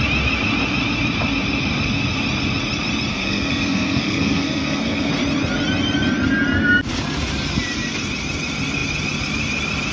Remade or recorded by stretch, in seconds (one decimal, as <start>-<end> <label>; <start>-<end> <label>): 0.0-3.1 recorded; 3.1-5.1 remade; 5.1-9.9 recorded